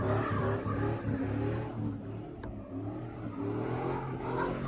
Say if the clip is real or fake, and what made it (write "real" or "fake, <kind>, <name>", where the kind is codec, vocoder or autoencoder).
real